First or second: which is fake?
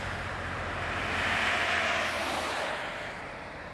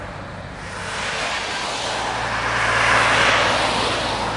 first